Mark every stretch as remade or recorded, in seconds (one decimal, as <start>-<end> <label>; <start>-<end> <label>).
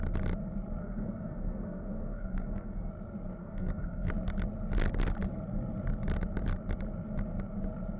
0.0-0.8 recorded; 0.8-2.9 remade; 2.9-3.4 recorded; 3.4-4.1 remade; 4.1-8.0 recorded